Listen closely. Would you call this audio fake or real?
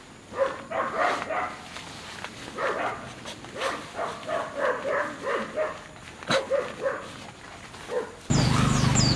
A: real